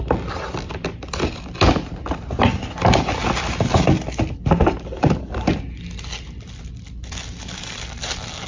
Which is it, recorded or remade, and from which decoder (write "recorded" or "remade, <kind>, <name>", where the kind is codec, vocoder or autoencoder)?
recorded